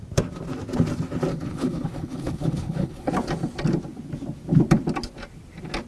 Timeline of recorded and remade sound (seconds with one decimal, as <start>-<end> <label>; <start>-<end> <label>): 0.0-1.3 recorded; 1.3-3.1 remade; 3.1-5.9 recorded